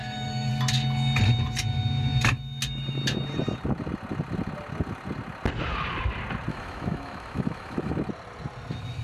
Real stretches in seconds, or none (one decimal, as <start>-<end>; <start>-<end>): 0.5-6.5; 7.9-9.0